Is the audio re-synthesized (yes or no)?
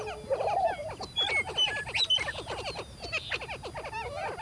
no